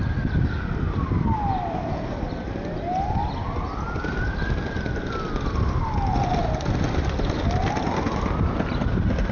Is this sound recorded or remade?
recorded